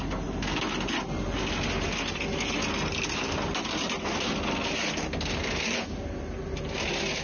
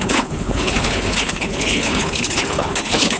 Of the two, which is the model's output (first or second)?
second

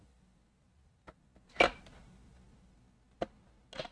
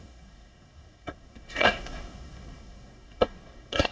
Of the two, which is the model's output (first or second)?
second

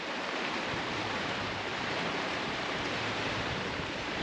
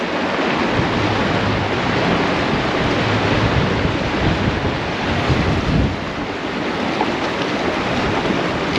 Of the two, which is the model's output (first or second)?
first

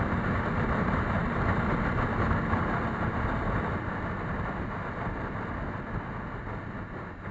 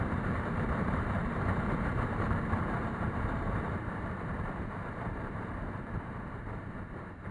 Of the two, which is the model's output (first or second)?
second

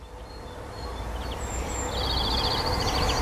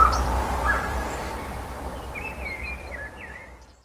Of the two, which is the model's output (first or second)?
second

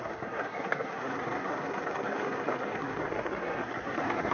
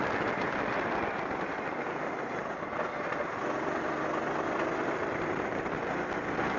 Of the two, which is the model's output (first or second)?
first